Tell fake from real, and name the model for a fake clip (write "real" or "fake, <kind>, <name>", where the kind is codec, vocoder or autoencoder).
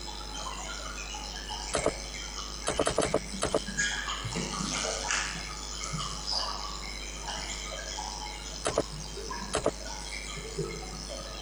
real